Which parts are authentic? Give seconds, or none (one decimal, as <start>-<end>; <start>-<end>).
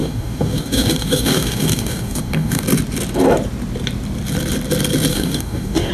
2.6-5.1